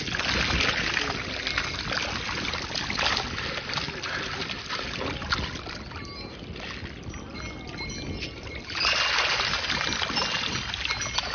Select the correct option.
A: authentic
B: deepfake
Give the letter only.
A